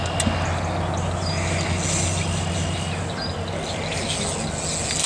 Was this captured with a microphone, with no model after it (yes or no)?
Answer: yes